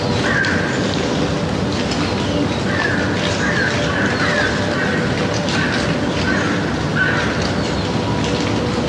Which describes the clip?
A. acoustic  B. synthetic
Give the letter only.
A